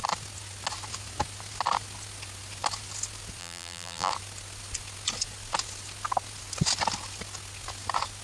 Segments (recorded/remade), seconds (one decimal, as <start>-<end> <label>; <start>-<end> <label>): 0.0-3.4 recorded; 3.4-4.1 remade; 4.1-8.2 recorded